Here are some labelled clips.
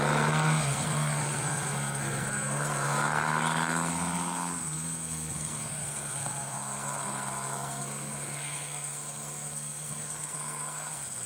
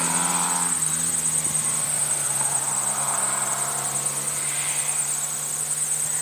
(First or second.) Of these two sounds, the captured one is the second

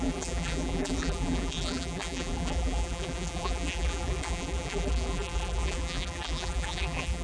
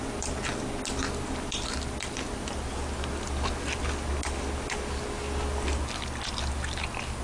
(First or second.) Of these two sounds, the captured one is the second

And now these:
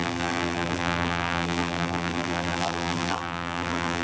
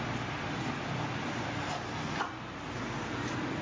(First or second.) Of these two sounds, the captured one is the second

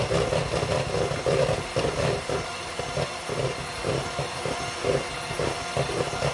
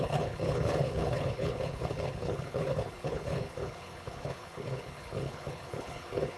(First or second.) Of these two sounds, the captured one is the first